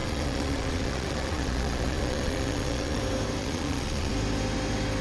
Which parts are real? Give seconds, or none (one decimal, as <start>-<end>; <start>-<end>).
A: 3.0-3.4; 4.1-5.0